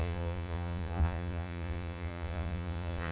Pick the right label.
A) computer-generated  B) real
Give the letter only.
A